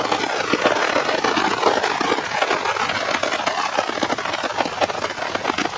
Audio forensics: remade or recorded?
recorded